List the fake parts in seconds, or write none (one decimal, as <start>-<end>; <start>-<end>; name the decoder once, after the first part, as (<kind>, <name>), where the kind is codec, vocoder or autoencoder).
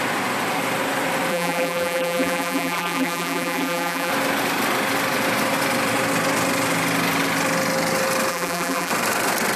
1.3-4.1 (vocoder, BigVGAN v2); 8.3-8.9